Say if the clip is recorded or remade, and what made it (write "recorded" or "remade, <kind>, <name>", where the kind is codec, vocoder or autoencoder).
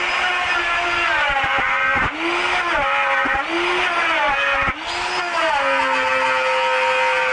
recorded